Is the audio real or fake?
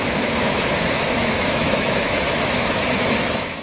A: fake